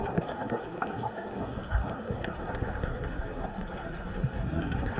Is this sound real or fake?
fake